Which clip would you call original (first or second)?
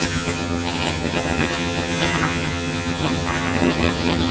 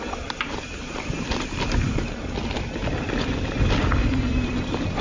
second